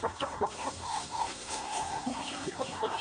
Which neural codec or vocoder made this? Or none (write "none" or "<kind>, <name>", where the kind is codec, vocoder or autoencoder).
codec, SNAC